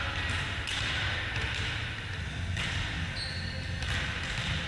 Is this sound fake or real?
real